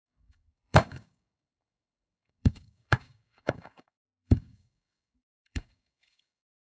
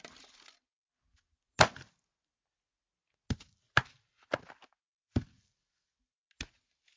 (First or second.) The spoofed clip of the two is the first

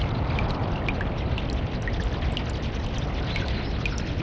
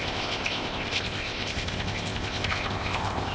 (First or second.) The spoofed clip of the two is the second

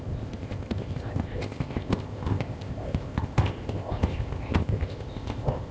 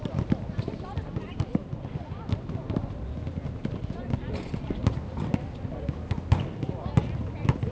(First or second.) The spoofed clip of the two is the first